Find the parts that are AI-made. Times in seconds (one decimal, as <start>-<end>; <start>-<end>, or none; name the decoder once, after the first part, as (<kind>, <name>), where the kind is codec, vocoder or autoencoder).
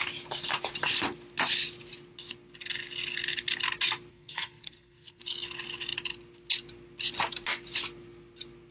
4.1-5.2 (codec, SNAC)